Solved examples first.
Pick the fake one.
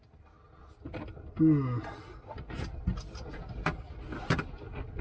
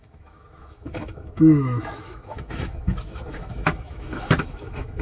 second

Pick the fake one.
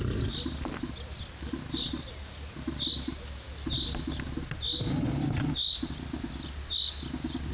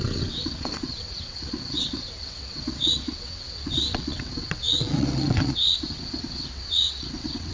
second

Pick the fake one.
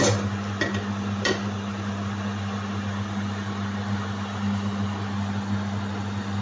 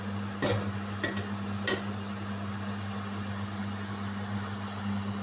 first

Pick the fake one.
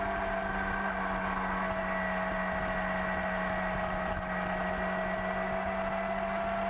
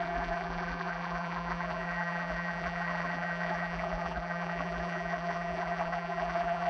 second